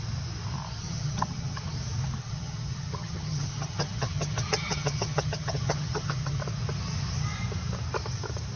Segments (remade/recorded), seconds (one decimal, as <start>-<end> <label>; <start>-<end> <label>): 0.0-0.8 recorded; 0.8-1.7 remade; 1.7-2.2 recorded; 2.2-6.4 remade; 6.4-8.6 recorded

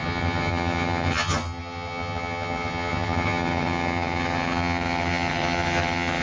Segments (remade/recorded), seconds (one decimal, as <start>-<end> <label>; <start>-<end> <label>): 0.0-6.2 remade

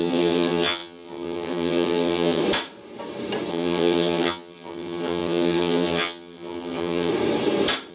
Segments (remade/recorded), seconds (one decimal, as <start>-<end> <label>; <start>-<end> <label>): 0.0-2.4 remade; 2.4-3.5 recorded; 3.5-7.1 remade; 7.1-7.9 recorded

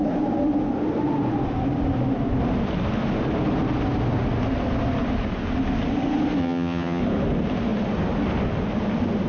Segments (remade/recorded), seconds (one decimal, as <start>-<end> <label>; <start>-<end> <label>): 0.0-6.4 recorded; 6.4-7.0 remade; 7.0-9.3 recorded